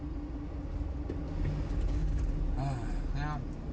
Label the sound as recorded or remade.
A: recorded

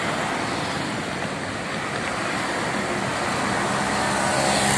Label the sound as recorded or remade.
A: recorded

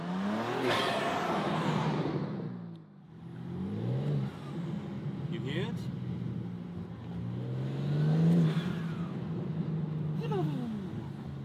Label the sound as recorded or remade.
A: recorded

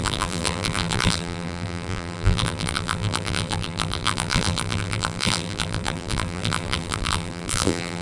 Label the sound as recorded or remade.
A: remade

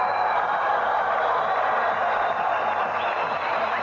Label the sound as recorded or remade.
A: remade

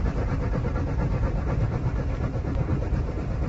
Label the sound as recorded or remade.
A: remade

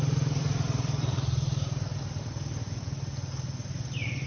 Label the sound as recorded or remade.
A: remade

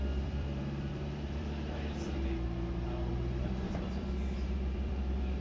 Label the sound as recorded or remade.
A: remade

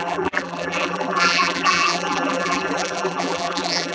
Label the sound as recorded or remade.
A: remade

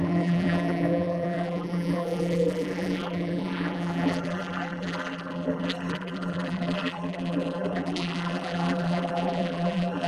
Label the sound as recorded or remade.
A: remade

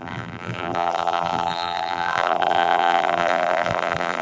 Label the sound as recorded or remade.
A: remade